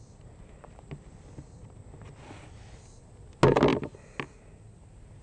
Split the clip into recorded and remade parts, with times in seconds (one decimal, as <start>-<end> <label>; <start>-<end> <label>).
0.0-5.2 recorded